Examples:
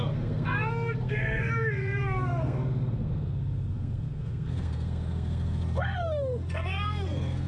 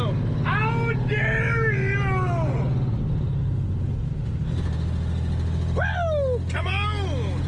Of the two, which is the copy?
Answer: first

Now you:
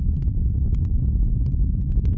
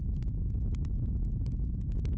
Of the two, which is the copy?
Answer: first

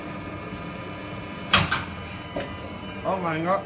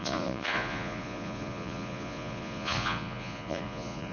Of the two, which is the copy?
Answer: second